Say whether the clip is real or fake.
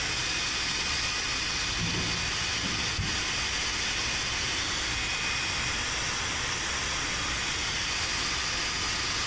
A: real